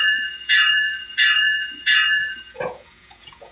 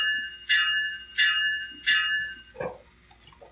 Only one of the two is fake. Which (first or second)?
first